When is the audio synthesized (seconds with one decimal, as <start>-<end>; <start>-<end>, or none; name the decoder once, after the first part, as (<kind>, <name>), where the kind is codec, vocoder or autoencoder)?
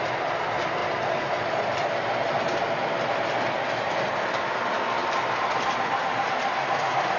none